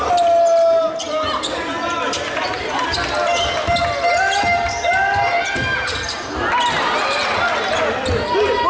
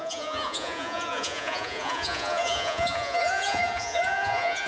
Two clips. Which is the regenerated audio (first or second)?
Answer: second